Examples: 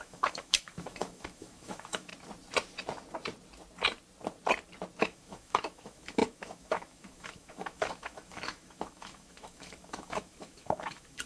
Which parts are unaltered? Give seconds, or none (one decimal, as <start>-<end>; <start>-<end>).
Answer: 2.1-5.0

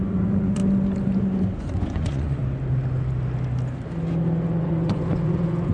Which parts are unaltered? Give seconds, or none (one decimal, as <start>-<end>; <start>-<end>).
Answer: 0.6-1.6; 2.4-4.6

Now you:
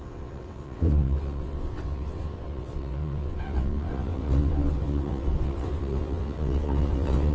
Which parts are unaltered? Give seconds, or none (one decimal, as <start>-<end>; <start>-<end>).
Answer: none

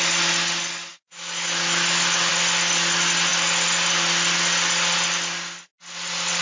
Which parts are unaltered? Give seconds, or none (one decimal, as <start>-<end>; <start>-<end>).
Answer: 0.0-0.9; 2.3-6.4

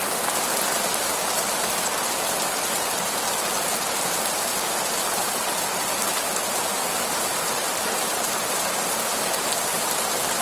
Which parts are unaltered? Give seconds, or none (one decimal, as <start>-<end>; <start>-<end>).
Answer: 0.0-4.5; 5.4-6.2; 8.6-10.4

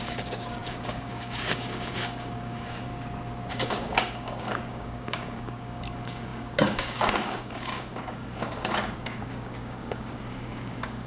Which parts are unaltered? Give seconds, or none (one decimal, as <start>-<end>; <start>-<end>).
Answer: 2.9-3.5

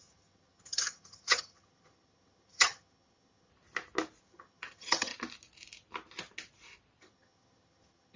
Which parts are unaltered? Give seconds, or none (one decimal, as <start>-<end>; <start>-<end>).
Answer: 3.5-4.2; 5.1-7.0

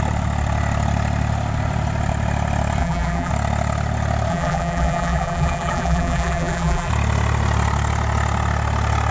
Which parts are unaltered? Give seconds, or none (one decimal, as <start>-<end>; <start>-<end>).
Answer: 0.0-2.8; 3.3-4.3; 6.9-9.1